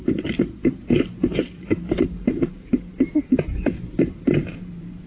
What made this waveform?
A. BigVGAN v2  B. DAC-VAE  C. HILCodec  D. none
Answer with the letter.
A